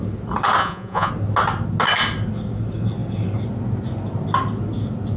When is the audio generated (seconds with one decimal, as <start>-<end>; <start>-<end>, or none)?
0.6-1.1